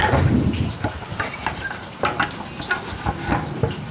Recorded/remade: recorded